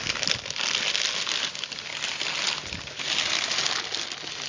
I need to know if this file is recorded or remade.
recorded